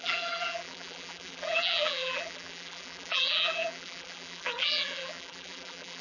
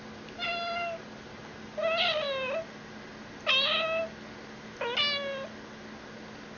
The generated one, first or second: first